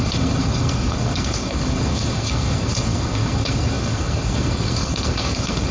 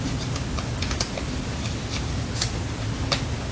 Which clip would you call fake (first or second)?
first